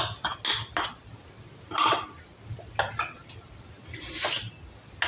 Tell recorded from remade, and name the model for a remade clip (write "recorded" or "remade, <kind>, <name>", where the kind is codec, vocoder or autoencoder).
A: recorded